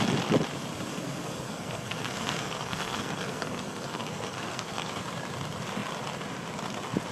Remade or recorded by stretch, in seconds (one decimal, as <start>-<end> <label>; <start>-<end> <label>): 0.0-0.9 recorded; 0.9-4.9 remade; 4.9-7.1 recorded